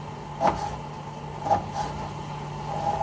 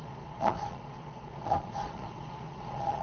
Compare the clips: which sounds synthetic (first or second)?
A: second